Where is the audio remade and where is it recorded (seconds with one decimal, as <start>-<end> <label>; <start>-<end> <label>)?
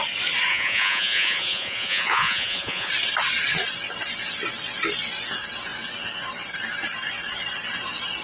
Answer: 0.0-0.5 recorded; 0.5-2.9 remade; 2.9-8.2 recorded